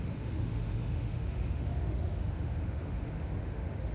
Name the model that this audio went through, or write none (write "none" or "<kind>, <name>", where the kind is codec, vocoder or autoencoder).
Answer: autoencoder, DAC-VAE